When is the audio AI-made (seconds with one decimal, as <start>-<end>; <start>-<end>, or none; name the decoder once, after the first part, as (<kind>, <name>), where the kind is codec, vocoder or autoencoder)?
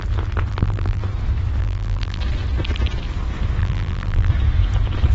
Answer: 0.5-1.0 (vocoder, BigVGAN v2); 1.6-2.2; 3.6-4.3